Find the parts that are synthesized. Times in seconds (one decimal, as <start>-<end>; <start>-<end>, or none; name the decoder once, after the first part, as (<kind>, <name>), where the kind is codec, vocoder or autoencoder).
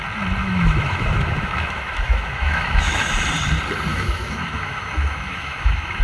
0.4-3.1 (autoencoder, DAC-VAE); 3.9-6.0